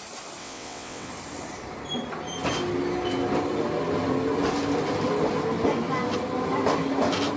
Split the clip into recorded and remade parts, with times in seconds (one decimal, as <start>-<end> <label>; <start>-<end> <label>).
0.0-0.4 recorded; 0.4-1.1 remade; 1.1-7.4 recorded